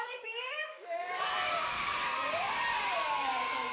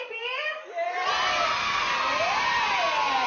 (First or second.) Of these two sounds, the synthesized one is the first